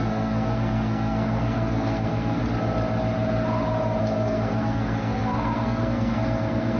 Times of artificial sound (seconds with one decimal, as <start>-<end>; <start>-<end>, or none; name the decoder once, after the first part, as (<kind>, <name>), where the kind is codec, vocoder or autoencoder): 0.0-2.4 (codec, SNAC); 4.0-6.8